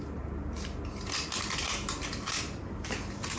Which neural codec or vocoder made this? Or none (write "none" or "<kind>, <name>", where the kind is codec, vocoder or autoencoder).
none